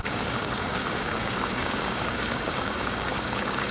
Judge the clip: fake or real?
fake